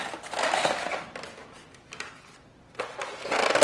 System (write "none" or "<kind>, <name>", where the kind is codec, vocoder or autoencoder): none